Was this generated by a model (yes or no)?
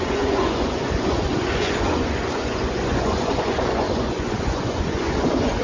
yes